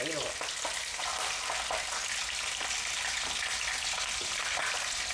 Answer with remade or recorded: recorded